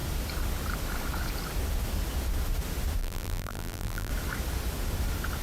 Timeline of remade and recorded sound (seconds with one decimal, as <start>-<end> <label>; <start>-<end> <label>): 0.0-3.0 recorded; 3.0-4.1 remade; 4.1-5.4 recorded

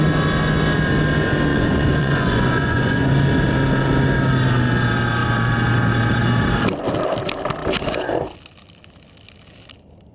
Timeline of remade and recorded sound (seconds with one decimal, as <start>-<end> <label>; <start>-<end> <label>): 0.0-1.5 recorded; 1.5-3.1 remade; 3.1-10.1 recorded

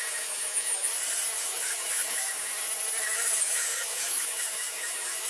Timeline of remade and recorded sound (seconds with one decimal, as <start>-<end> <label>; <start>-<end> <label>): 0.0-0.9 remade; 0.9-1.4 recorded; 1.4-2.5 remade; 2.5-3.0 recorded; 3.0-5.3 remade